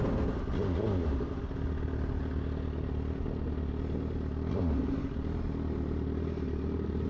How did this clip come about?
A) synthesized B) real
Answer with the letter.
B